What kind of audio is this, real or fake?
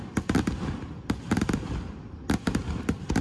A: real